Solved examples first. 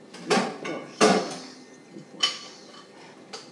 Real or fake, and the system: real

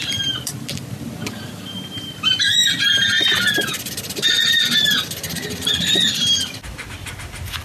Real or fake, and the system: real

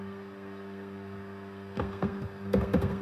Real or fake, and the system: fake, codec, SNAC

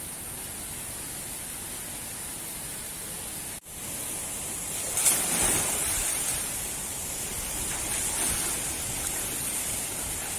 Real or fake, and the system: real